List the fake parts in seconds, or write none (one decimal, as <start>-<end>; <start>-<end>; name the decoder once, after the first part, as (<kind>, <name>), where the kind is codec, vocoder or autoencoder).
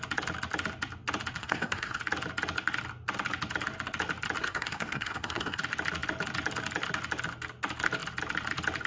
1.4-2.0 (codec, SNAC); 4.4-5.6